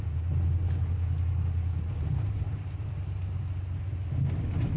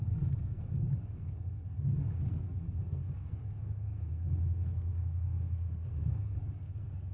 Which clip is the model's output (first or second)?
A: second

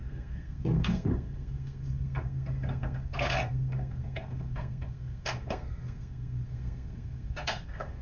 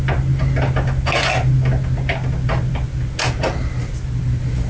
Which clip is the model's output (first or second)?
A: first